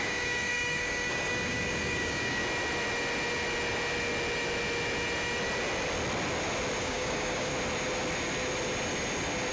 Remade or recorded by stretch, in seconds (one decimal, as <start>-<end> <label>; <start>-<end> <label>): 0.0-2.4 remade; 2.4-6.8 recorded; 6.8-7.5 remade; 7.5-9.5 recorded